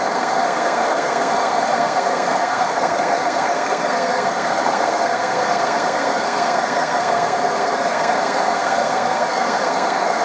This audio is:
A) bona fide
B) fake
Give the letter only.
B